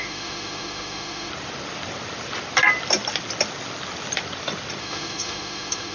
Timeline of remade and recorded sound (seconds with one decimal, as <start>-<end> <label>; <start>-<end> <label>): 0.0-1.3 remade; 1.3-4.8 recorded; 4.8-5.9 remade